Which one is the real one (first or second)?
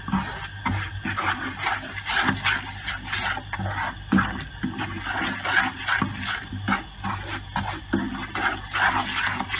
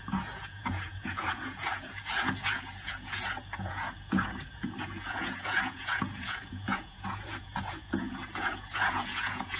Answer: first